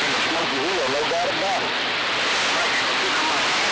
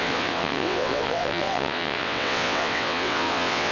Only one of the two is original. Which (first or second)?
first